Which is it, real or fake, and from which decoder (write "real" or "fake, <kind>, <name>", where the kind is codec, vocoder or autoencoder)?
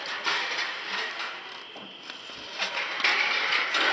real